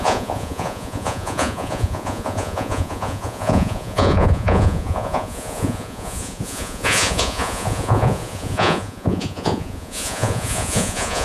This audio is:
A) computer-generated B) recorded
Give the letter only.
A